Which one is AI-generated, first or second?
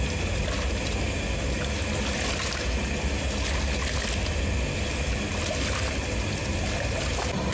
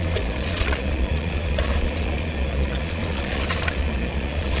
second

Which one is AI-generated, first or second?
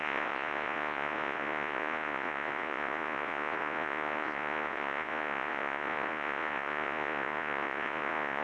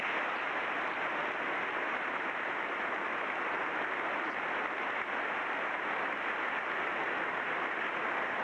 first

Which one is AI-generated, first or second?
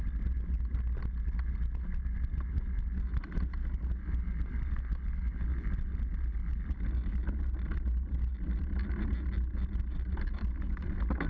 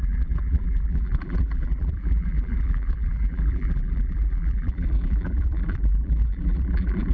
second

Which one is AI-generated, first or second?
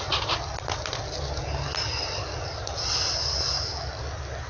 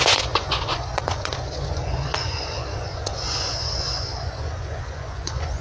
second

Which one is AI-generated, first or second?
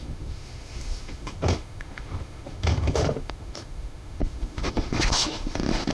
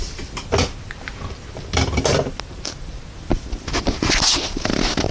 first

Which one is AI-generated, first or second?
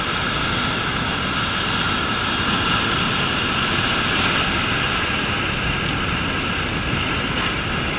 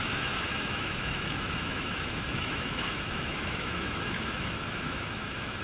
second